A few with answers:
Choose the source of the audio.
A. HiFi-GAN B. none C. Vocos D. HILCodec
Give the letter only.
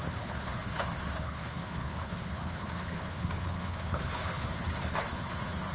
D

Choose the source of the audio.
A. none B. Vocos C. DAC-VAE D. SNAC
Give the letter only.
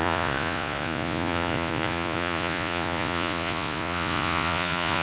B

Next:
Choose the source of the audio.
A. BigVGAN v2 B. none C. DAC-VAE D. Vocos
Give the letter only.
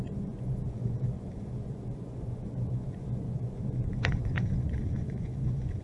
D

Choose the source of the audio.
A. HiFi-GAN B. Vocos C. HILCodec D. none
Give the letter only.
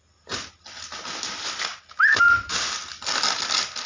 D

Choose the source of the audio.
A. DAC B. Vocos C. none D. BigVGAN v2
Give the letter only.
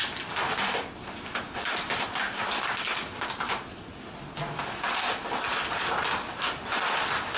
C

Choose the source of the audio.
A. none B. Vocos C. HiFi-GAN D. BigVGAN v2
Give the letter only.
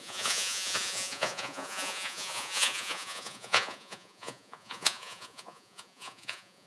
B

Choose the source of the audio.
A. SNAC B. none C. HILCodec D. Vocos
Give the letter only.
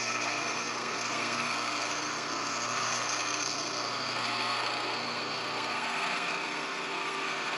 A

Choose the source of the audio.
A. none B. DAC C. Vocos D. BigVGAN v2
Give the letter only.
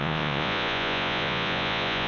C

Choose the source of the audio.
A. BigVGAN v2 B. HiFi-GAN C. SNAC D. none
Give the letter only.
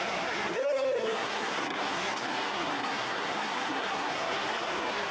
C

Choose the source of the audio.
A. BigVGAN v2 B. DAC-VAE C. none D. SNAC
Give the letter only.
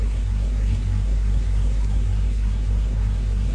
D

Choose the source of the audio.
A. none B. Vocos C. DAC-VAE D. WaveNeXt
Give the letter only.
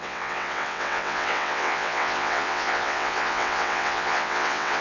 D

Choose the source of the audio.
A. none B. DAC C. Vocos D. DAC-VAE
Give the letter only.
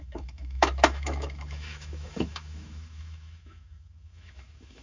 D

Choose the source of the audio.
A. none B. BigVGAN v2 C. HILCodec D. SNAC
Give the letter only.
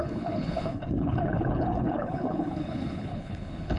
C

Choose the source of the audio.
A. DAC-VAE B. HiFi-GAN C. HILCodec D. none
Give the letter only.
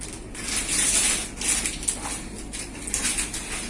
D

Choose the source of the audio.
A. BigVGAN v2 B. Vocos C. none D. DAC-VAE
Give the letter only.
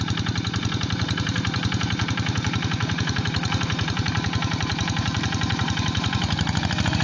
A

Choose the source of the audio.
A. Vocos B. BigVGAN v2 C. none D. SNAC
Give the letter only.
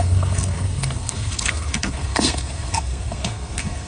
D